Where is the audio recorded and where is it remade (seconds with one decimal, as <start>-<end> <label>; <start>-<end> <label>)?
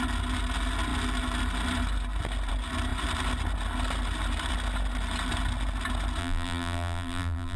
0.0-6.2 recorded; 6.2-7.6 remade